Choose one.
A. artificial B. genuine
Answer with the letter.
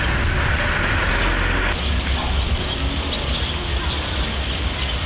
B